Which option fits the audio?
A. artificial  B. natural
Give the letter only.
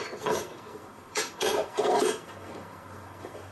A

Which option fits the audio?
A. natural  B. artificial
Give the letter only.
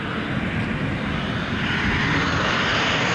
A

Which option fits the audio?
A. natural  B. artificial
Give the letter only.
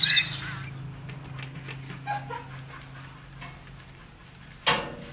A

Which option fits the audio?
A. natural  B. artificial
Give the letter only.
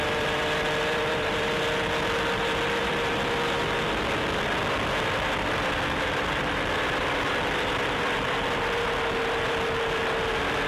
B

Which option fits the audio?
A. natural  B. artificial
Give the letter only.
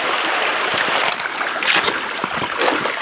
A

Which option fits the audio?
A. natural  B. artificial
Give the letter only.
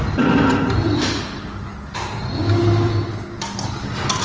A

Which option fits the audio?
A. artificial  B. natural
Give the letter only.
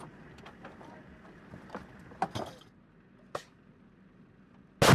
B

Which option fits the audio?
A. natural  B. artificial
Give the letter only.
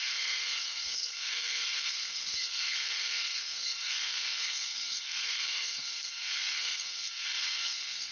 B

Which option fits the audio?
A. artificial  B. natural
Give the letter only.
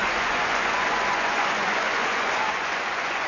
A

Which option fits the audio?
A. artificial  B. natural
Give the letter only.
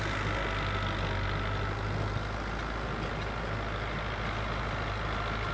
B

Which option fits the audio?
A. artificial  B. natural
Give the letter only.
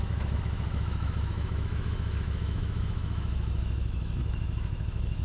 A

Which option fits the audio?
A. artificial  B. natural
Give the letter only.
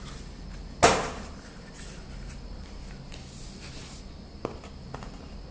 B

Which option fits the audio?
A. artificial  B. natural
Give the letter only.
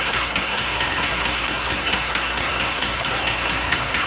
A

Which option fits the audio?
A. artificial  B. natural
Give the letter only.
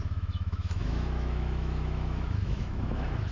A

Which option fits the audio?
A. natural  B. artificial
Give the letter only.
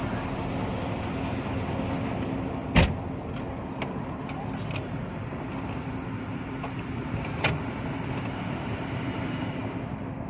A